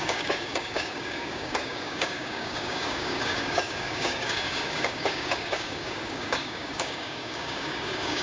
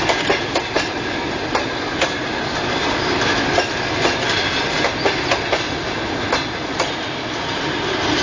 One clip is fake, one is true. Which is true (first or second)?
second